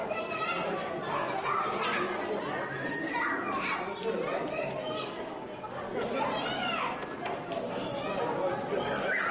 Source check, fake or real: real